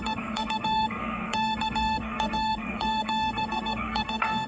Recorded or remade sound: remade